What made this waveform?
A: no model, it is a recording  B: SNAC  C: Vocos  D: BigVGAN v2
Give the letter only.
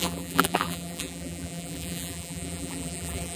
D